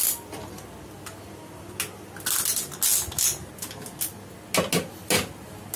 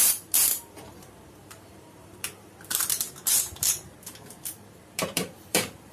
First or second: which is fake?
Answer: second